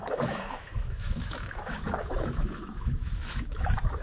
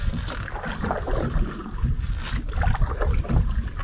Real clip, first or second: second